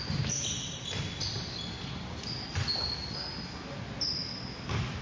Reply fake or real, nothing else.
real